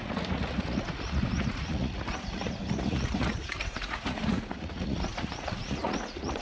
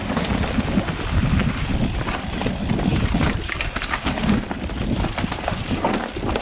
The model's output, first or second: first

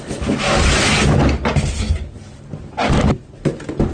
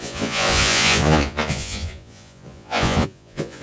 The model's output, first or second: second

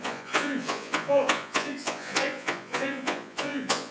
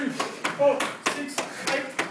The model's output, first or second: first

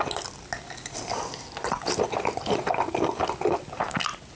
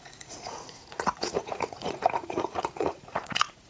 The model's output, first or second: second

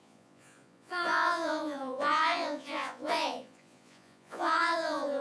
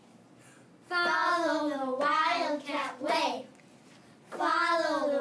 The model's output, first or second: first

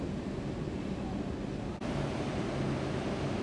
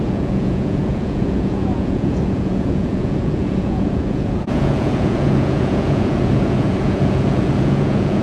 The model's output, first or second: second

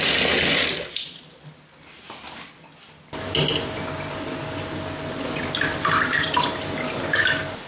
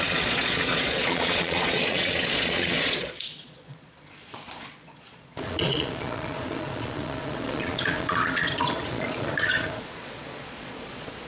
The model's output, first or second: second